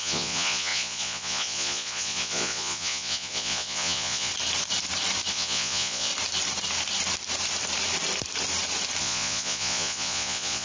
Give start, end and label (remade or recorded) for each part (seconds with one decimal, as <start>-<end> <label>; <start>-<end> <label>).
0.0-4.3 remade; 4.3-5.3 recorded; 5.3-6.1 remade; 6.1-9.0 recorded; 9.0-10.6 remade